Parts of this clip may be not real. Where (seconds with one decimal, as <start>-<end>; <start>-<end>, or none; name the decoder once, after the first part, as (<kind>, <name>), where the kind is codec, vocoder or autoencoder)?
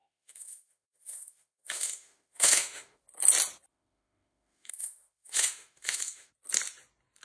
0.0-3.0 (autoencoder, DAC-VAE); 3.7-6.3